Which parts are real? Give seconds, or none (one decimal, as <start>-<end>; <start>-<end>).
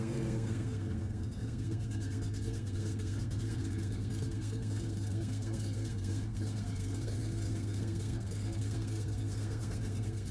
none